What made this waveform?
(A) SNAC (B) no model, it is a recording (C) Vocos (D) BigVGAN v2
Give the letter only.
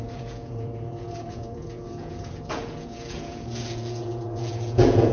C